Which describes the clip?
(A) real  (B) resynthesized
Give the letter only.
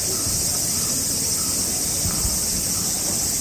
A